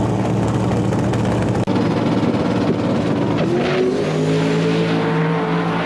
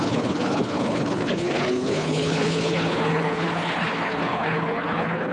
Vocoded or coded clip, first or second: second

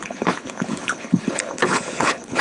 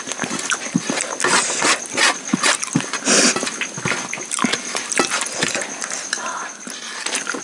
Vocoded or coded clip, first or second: first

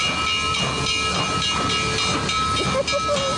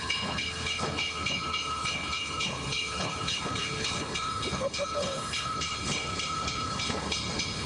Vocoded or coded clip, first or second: second